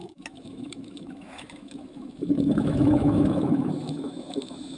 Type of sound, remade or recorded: remade